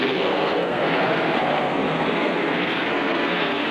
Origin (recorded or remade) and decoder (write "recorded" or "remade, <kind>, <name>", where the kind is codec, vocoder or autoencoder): remade, codec, SNAC